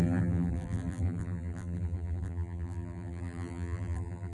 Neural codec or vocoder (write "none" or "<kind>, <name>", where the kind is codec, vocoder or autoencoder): vocoder, BigVGAN v2